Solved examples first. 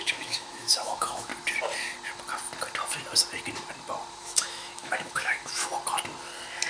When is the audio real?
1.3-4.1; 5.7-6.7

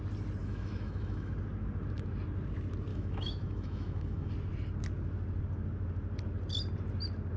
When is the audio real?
0.0-0.4; 1.3-2.9; 4.3-7.4

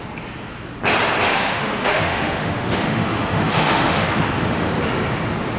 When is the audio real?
0.0-1.3; 4.7-5.6

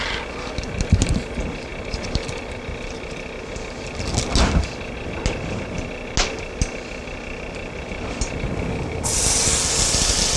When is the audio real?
0.0-10.4

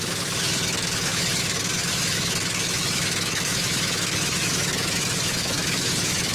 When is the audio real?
none

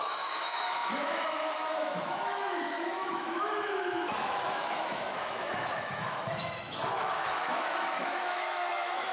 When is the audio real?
none

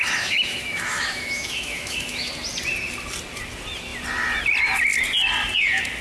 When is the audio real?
2.3-6.0

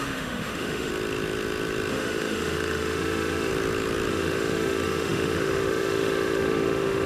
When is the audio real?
0.9-1.9; 3.5-4.1